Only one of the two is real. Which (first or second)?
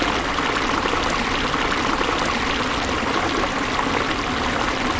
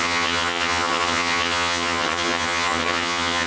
first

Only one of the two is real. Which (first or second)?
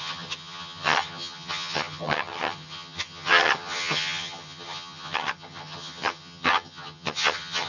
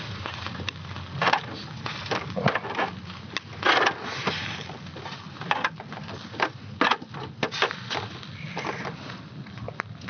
second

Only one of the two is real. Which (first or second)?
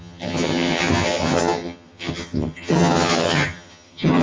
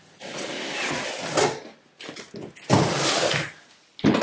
second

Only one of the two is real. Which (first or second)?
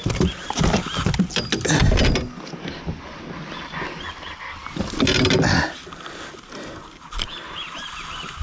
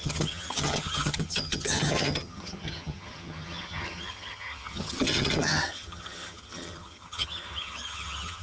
first